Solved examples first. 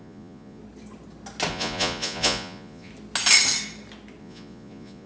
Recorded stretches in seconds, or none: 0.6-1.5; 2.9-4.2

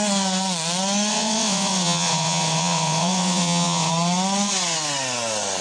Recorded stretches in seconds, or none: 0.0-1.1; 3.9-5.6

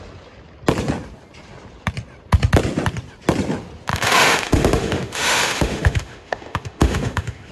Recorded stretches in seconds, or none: 0.0-3.9

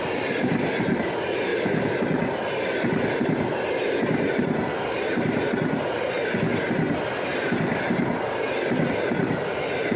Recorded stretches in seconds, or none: 0.0-10.0

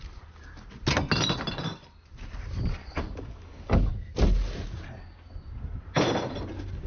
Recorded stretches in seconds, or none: 0.0-2.8; 3.9-6.9

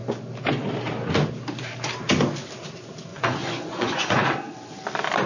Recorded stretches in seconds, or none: 0.0-3.1; 4.3-5.3

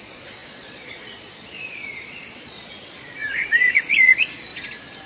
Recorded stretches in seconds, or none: 4.5-5.1